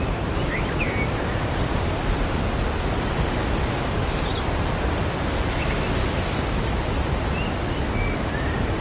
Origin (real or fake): real